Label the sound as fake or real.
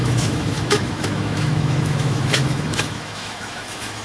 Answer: fake